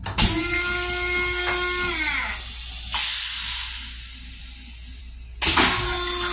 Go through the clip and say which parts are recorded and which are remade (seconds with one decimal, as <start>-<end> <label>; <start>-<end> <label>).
0.0-6.3 recorded